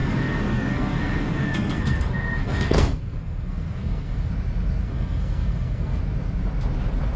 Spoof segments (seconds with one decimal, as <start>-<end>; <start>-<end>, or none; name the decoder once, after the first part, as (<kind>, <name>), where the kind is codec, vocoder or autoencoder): 0.0-4.3 (codec, SNAC); 4.8-6.0